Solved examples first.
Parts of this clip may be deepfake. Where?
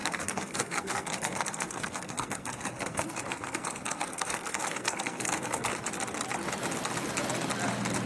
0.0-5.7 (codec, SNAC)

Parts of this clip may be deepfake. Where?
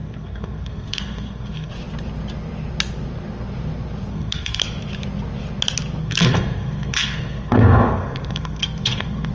0.0-1.7 (codec, SNAC); 4.1-4.6; 6.0-9.3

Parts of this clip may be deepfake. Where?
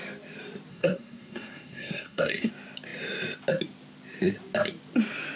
0.7-2.5 (codec, SNAC)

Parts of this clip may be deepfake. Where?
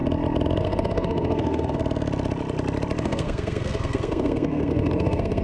0.6-1.8 (codec, SNAC); 3.0-5.4